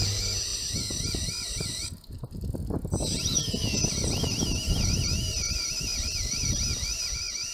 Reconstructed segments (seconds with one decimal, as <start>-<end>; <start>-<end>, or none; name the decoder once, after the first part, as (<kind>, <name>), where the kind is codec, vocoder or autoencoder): none